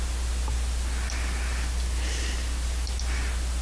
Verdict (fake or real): real